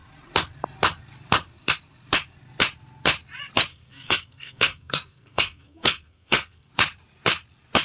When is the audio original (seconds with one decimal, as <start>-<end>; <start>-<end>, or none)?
0.0-3.7; 6.7-7.8